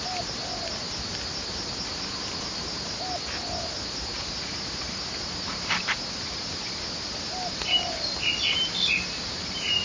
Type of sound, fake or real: real